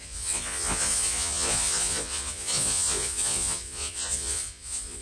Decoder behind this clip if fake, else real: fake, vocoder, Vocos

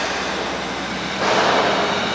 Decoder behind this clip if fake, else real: real